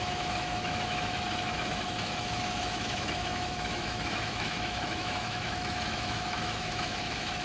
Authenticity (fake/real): fake